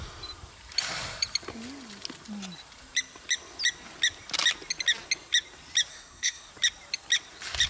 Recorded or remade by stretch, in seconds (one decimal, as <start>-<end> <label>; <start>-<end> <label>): 0.0-5.9 recorded; 5.9-6.5 remade; 6.5-7.7 recorded